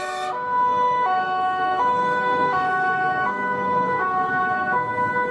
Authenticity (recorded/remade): remade